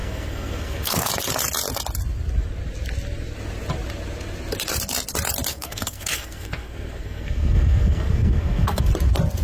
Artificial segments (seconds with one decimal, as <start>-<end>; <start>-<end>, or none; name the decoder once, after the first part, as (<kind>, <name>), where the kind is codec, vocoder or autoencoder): 0.0-1.1 (codec, SNAC); 5.5-8.8